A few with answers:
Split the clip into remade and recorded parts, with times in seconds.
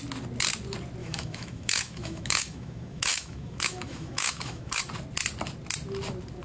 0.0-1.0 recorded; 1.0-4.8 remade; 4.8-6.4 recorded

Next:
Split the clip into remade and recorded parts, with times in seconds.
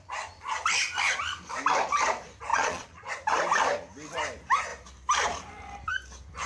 0.0-2.5 recorded; 2.5-3.1 remade; 3.1-6.5 recorded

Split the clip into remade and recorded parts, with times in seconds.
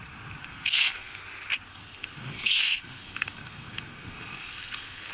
0.0-0.4 recorded; 0.4-1.2 remade; 1.2-1.7 recorded; 1.7-5.1 remade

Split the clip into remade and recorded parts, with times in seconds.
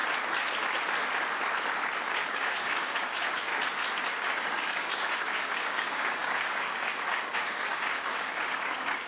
0.0-2.1 recorded; 2.1-3.5 remade; 3.5-4.1 recorded; 4.1-9.1 remade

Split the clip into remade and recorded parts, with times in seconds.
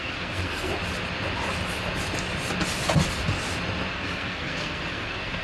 0.0-0.7 remade; 0.7-3.9 recorded; 3.9-5.4 remade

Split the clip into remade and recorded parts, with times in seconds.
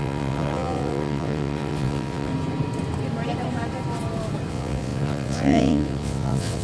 0.0-2.3 remade; 2.3-4.5 recorded; 4.5-6.6 remade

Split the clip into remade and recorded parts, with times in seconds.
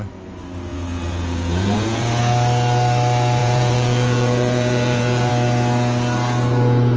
0.0-0.7 recorded; 0.7-2.2 remade; 2.2-3.4 recorded; 3.4-5.3 remade; 5.3-7.0 recorded